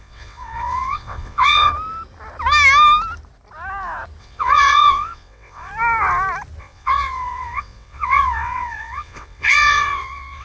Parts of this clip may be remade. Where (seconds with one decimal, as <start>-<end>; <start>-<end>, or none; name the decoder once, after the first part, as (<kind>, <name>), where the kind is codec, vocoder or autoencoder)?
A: 0.0-1.7 (vocoder, WaveNeXt); 4.2-5.7; 6.6-10.4